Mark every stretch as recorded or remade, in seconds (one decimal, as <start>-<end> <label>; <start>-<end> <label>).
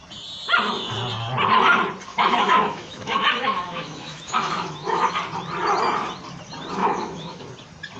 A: 0.0-2.1 recorded; 2.1-5.1 remade; 5.1-6.8 recorded; 6.8-7.4 remade; 7.4-8.0 recorded